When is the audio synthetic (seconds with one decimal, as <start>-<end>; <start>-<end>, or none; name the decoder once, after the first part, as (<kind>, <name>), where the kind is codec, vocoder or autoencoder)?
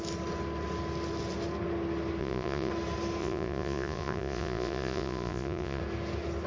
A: 2.2-2.7 (vocoder, Vocos); 3.2-5.8